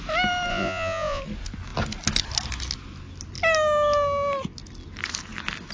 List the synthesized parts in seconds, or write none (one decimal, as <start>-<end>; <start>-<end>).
0.5-1.2